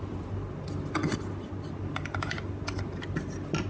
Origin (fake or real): real